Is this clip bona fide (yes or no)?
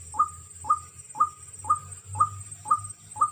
yes